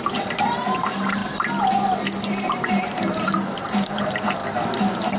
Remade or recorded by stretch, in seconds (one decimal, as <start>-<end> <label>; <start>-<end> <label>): 0.0-1.2 remade; 1.2-2.3 recorded; 2.3-4.4 remade; 4.4-5.2 recorded